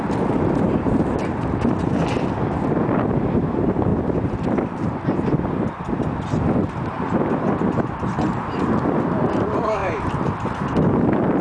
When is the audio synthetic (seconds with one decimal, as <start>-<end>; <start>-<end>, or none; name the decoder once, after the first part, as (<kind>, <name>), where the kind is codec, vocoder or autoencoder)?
none